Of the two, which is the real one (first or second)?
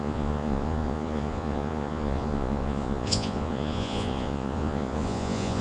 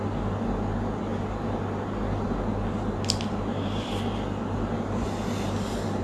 second